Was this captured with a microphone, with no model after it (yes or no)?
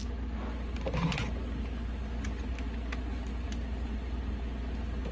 yes